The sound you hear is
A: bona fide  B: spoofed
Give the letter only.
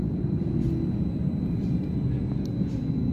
A